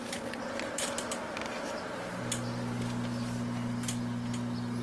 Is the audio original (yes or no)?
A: yes